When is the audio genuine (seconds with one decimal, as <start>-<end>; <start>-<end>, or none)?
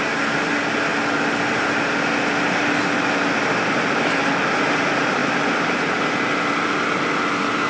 0.0-7.7